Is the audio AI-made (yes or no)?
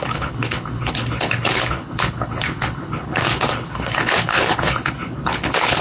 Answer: yes